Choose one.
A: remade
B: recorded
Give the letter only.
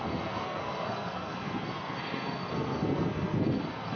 A